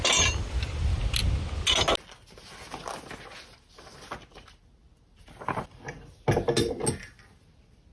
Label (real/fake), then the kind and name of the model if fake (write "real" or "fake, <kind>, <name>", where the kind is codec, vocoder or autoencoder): real